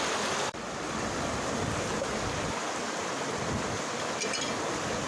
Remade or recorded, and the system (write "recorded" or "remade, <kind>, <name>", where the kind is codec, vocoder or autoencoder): recorded